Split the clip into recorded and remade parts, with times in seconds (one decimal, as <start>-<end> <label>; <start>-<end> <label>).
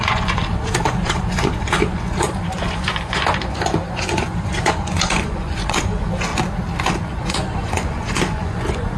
0.0-6.3 remade; 6.3-6.8 recorded; 6.8-9.0 remade